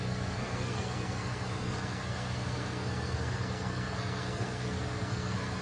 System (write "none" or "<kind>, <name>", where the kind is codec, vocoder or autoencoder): codec, SNAC